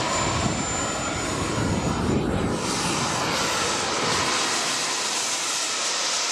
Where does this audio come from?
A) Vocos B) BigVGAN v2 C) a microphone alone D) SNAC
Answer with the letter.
C